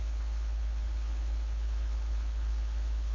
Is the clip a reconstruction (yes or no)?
yes